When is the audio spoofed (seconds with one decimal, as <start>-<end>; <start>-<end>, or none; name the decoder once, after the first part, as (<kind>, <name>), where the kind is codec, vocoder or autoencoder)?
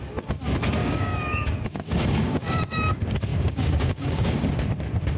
0.8-2.9 (codec, DAC); 3.3-4.5